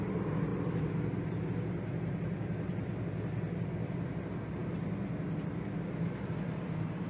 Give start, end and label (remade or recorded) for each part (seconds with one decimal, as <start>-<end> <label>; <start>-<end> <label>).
0.0-7.1 recorded